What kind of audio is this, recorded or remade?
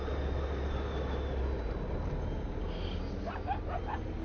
recorded